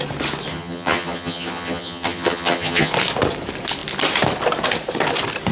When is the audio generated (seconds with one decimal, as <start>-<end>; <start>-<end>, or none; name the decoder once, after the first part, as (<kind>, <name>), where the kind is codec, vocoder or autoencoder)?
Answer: 0.5-2.9 (vocoder, HiFi-GAN)